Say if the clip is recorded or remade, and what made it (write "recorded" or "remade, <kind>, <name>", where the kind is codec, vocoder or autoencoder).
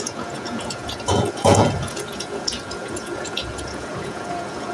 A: remade, vocoder, Vocos